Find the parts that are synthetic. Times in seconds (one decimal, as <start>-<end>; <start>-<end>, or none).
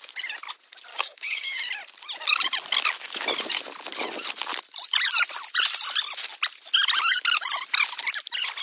0.9-1.6